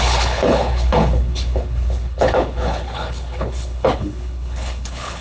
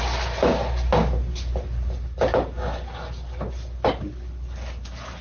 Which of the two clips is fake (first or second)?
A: first